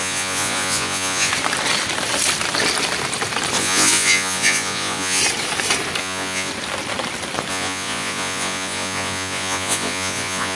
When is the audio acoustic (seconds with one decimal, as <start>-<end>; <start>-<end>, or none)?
1.3-3.6; 5.2-6.0; 6.5-7.5